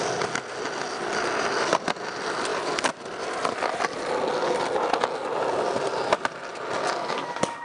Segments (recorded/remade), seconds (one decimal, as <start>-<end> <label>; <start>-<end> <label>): 0.0-7.6 recorded